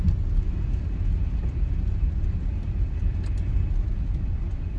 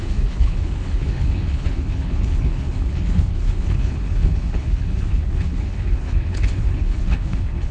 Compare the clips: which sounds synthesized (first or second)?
second